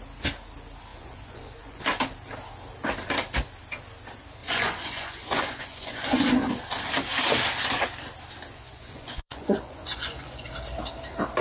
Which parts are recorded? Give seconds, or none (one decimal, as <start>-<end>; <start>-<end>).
0.0-0.9; 1.8-4.4; 6.3-8.5; 10.5-11.4